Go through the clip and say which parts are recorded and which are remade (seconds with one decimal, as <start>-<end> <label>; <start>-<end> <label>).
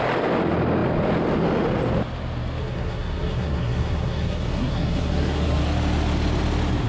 0.0-2.6 recorded; 2.6-5.6 remade; 5.6-6.9 recorded